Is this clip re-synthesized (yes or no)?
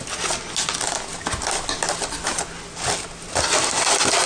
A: no